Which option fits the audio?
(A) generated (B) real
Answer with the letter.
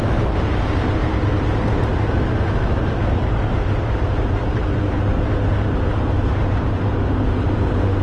A